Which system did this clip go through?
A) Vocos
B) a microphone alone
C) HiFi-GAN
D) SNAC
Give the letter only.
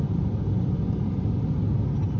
B